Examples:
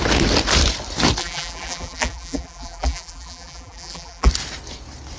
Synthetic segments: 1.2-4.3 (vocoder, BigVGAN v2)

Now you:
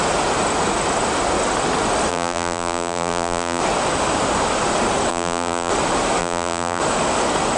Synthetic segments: 2.1-3.6 (vocoder, BigVGAN v2); 5.1-5.7; 6.2-6.8

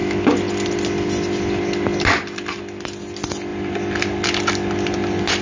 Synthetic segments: none

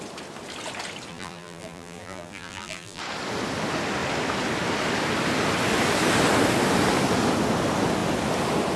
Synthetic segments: 1.1-3.0 (vocoder, BigVGAN v2)